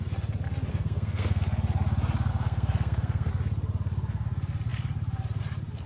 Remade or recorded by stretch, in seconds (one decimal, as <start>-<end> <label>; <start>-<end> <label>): 0.0-0.7 recorded; 0.7-1.4 remade; 1.4-2.3 recorded; 2.3-3.3 remade; 3.3-5.9 recorded